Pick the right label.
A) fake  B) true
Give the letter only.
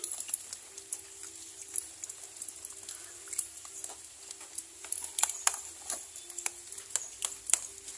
B